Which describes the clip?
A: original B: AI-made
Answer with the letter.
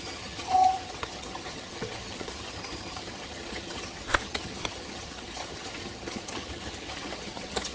B